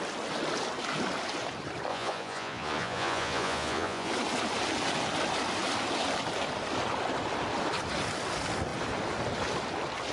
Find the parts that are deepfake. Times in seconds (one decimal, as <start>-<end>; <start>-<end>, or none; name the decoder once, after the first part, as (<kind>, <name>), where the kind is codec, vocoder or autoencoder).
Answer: 1.9-4.1 (vocoder, Vocos)